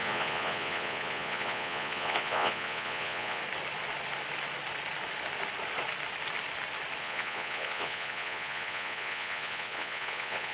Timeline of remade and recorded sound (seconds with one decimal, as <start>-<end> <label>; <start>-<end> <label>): 0.0-3.4 remade; 3.4-7.0 recorded; 7.0-10.5 remade